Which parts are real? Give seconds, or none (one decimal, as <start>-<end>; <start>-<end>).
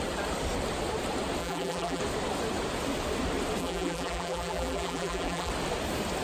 0.0-1.4; 2.0-3.6; 5.5-6.2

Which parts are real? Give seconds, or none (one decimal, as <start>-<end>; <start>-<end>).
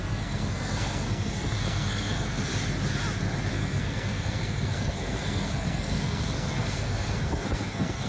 2.5-3.5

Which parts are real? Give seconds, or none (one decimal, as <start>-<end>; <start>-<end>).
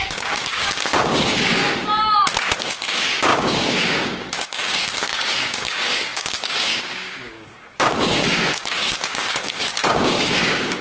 1.6-2.6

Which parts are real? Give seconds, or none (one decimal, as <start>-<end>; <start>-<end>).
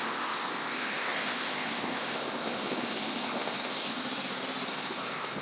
4.0-4.7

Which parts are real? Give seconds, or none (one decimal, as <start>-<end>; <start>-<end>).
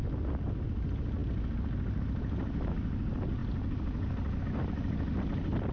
0.0-5.7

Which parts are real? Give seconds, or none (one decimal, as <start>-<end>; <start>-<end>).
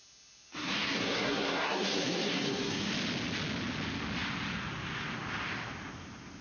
0.0-0.5; 2.9-6.4